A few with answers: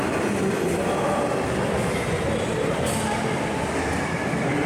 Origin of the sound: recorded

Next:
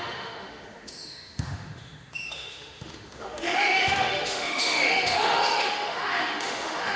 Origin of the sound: remade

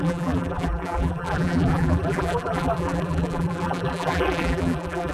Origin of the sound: remade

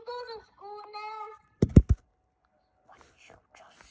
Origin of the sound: recorded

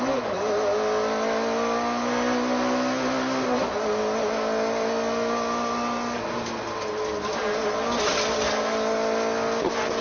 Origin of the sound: recorded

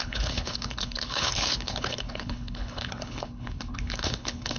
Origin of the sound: remade